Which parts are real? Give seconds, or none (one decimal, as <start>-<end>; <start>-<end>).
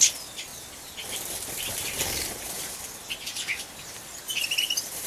none